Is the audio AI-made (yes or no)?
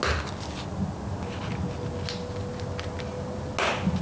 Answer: no